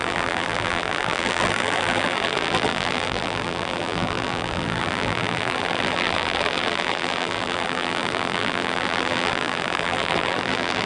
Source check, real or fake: fake